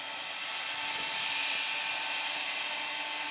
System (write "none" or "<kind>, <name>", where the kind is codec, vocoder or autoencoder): none